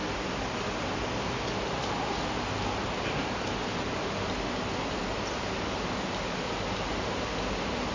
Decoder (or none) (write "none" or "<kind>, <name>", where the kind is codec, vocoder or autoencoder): none